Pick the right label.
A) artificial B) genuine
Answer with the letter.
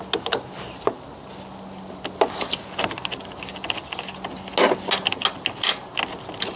B